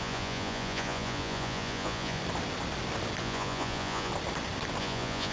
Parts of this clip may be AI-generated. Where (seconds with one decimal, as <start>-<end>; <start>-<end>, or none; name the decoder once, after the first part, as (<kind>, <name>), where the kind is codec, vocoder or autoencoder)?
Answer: 0.0-2.2 (vocoder, Vocos); 3.2-4.1; 4.8-5.3